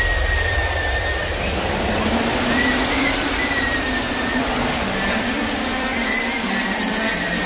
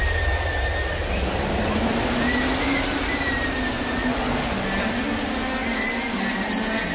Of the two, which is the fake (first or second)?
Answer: first